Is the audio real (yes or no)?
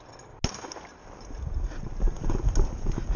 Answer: yes